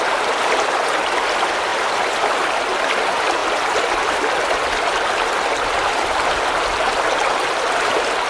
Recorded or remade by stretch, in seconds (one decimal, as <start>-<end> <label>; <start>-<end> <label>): 0.0-1.7 recorded; 1.7-2.3 remade; 2.3-8.3 recorded